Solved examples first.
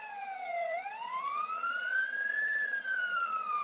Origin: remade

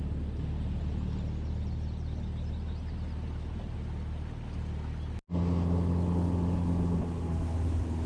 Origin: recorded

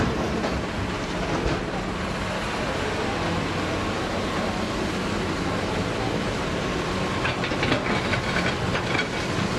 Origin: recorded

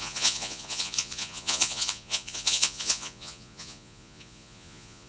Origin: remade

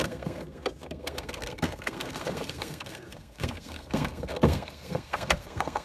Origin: remade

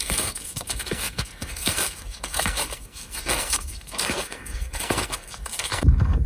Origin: remade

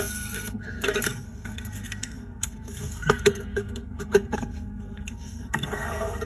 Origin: remade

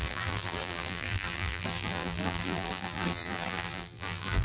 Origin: remade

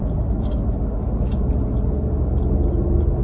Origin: recorded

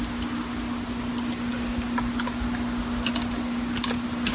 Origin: recorded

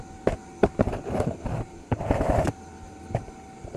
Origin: recorded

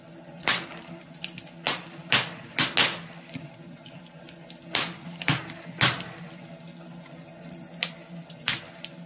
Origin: recorded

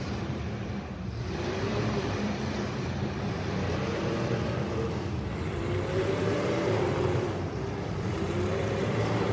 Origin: remade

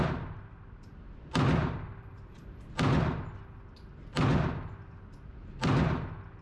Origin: recorded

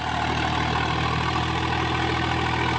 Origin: recorded